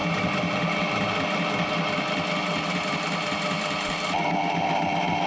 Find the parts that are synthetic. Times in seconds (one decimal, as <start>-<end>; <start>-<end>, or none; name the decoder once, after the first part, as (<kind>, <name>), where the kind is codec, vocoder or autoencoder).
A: none